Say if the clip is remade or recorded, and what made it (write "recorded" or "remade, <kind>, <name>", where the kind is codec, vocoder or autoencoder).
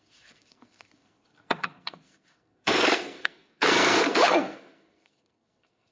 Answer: remade, codec, SNAC